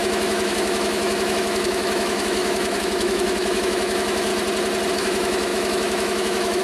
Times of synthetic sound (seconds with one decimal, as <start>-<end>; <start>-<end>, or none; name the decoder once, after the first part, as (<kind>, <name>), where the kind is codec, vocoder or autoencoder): 0.0-4.3 (autoencoder, DAC-VAE); 4.9-6.6